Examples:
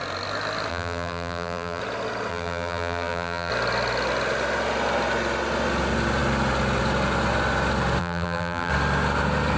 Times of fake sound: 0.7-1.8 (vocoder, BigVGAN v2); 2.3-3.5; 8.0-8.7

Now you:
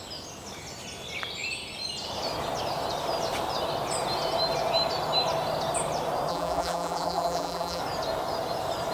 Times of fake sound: 6.3-7.8 (vocoder, BigVGAN v2)

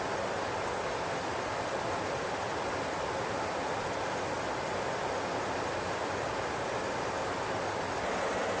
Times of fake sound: 2.5-4.1 (vocoder, BigVGAN v2)

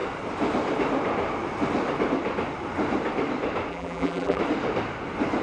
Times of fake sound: 3.7-4.4 (vocoder, BigVGAN v2)

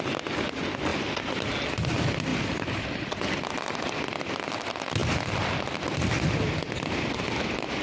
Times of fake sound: 2.3-3.4 (vocoder, BigVGAN v2); 5.0-5.6

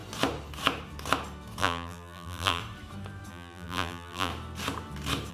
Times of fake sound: 1.6-2.6 (vocoder, BigVGAN v2); 3.3-4.3